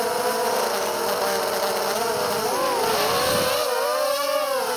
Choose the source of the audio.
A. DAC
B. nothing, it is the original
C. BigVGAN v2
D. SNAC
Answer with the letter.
B